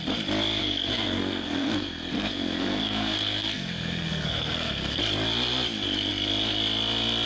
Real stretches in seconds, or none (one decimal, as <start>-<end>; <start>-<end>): 0.0-0.6; 5.0-7.3